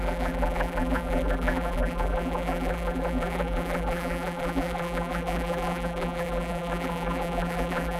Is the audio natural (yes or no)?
no